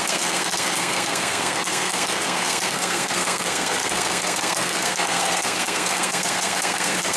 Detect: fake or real fake